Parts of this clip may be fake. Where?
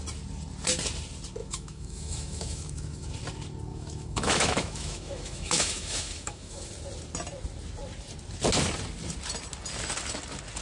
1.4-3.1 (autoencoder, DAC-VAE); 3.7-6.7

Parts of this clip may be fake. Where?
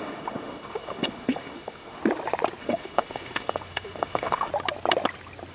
0.0-2.0 (autoencoder, DAC-VAE); 2.6-4.5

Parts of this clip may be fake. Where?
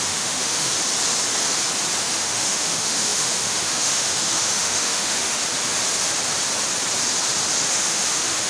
0.0-0.7 (autoencoder, DAC-VAE); 2.0-5.4; 7.7-8.5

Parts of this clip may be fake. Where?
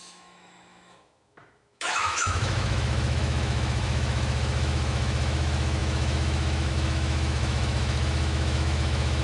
0.0-9.2 (autoencoder, DAC-VAE)